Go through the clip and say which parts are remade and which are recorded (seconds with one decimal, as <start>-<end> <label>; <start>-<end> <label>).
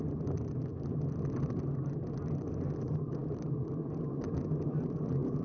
0.0-5.4 recorded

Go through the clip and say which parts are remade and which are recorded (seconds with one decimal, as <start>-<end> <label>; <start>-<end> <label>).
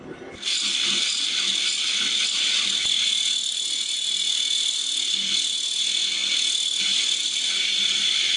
0.0-8.4 recorded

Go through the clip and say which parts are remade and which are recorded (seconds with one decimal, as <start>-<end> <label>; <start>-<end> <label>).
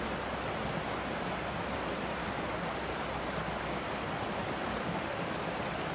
0.0-4.8 recorded; 4.8-5.3 remade; 5.3-5.9 recorded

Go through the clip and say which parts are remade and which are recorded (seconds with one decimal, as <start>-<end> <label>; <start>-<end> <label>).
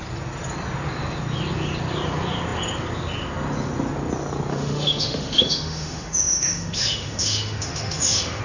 0.0-4.5 recorded; 4.5-8.4 remade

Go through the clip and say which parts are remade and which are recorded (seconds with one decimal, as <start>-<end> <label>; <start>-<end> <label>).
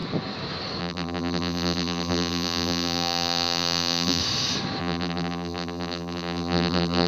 0.0-0.8 recorded; 0.8-4.2 remade; 4.2-4.8 recorded; 4.8-7.1 remade